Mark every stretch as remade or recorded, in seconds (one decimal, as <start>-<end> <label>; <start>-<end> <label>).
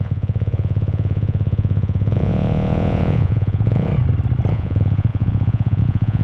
0.0-3.9 remade; 3.9-4.5 recorded; 4.5-6.2 remade